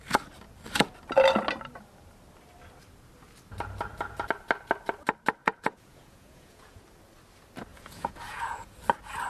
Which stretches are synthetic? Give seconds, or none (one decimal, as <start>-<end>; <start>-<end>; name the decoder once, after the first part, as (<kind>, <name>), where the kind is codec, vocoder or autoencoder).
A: 5.4-6.8 (vocoder, Vocos); 7.7-8.8